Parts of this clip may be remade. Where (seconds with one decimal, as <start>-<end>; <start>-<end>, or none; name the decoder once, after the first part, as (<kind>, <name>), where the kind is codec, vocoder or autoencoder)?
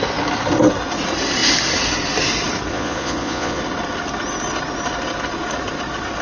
2.7-3.6 (vocoder, Vocos)